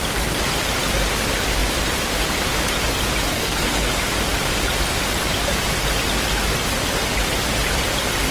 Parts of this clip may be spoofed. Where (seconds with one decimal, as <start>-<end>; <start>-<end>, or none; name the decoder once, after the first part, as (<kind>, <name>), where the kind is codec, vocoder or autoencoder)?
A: 3.3-3.9 (codec, SNAC)